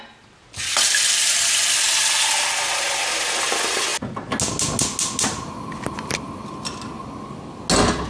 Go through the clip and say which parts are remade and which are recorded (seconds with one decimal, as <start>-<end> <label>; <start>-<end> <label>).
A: 0.0-8.1 recorded